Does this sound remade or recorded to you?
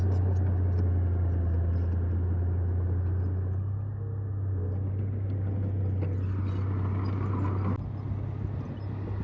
recorded